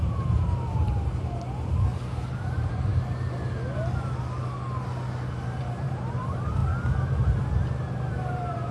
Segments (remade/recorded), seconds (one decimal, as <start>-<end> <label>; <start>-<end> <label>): 0.0-0.7 remade; 0.7-2.3 recorded; 2.3-2.9 remade; 2.9-5.3 recorded; 5.3-6.6 remade; 6.6-8.1 recorded; 8.1-8.7 remade